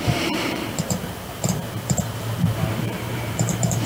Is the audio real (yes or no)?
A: no